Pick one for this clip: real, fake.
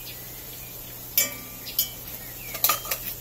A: real